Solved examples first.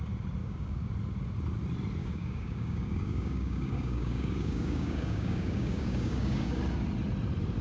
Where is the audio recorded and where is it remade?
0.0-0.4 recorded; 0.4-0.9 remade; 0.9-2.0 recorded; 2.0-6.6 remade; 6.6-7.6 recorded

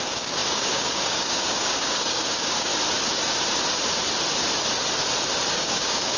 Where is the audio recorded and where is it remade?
0.0-2.7 remade; 2.7-5.5 recorded; 5.5-6.2 remade

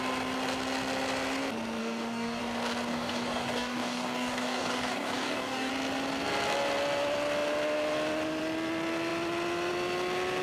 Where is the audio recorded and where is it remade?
0.0-1.8 recorded; 1.8-2.4 remade; 2.4-2.9 recorded; 2.9-5.7 remade; 5.7-10.4 recorded